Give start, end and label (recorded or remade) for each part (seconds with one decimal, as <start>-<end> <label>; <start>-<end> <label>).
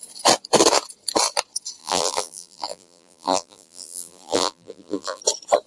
0.0-1.8 recorded; 1.8-5.2 remade; 5.2-5.7 recorded